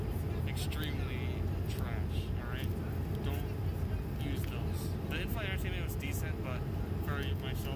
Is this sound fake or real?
real